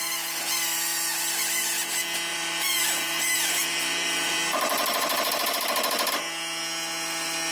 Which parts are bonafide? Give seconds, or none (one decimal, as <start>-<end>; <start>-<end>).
0.0-2.3; 6.1-7.5